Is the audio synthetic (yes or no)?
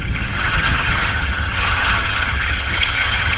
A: yes